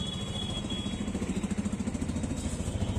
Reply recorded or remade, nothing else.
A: recorded